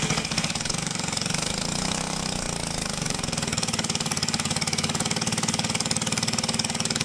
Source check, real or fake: fake